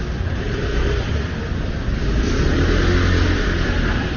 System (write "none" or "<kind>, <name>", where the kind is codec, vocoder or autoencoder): none